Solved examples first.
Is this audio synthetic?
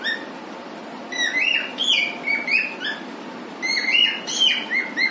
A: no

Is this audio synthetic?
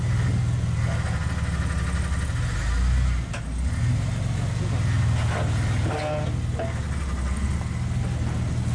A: no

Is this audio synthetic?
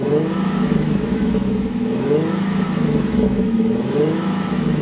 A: yes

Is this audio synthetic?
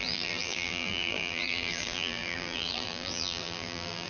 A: yes